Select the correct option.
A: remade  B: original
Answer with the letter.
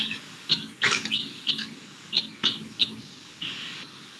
A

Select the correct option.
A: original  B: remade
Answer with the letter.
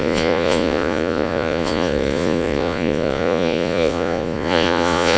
B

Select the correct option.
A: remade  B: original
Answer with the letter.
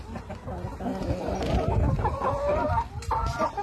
B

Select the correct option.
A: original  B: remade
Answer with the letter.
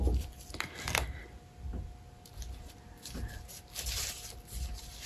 A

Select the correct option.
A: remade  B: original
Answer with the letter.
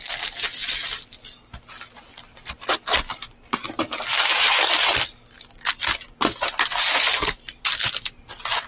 B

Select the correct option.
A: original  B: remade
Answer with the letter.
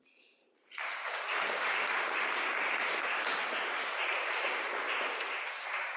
B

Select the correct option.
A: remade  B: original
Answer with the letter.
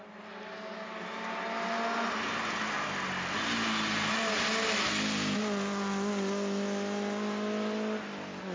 B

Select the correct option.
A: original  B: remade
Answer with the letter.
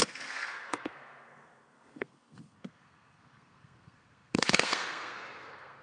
B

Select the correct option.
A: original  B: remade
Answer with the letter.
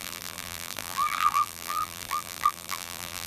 B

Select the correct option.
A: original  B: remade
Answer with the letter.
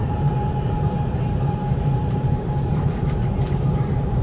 B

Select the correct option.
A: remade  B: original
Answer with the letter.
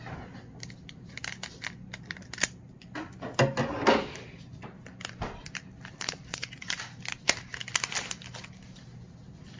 B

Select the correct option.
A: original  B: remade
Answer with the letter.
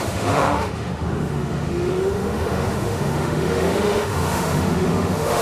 B